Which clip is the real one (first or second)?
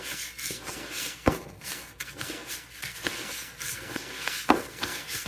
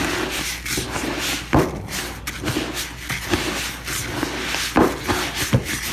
second